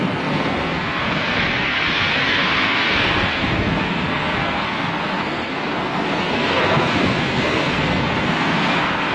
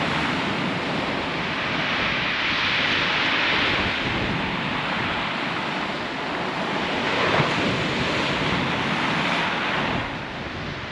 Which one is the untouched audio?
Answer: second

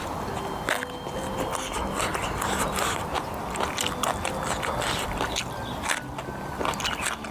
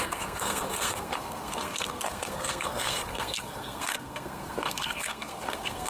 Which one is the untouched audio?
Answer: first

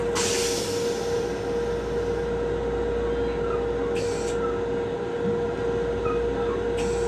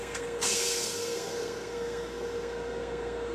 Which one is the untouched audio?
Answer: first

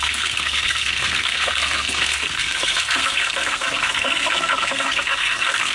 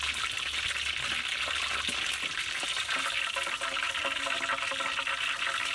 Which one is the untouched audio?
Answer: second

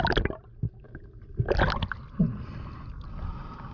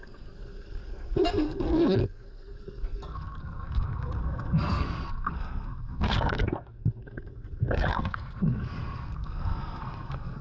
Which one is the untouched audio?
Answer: first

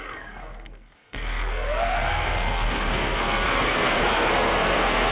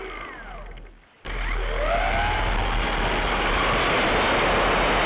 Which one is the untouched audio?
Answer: second